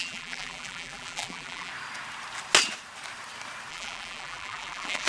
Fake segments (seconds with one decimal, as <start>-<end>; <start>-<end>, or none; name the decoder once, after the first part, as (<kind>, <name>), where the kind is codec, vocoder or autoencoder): 0.0-1.7 (vocoder, BigVGAN v2); 3.7-5.1